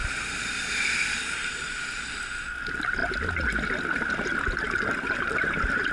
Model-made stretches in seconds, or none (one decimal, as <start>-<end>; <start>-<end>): 0.0-0.7